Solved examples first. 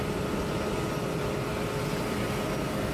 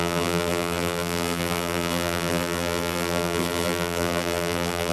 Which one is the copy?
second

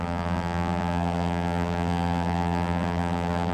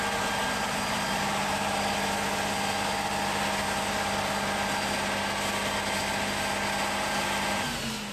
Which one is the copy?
first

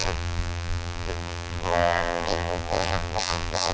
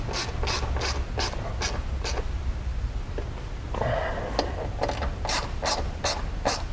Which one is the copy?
first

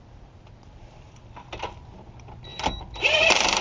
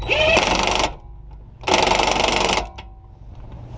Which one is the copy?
first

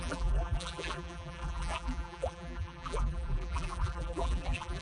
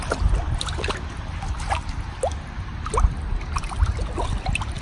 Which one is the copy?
first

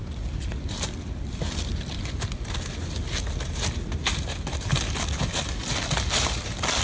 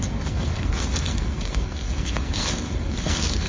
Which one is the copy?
second